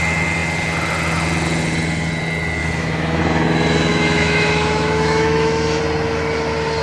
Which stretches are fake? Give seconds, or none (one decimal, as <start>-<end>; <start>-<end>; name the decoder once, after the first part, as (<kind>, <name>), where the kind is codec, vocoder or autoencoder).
2.6-3.2 (autoencoder, DAC-VAE); 3.9-5.8